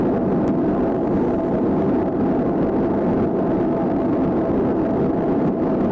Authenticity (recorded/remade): recorded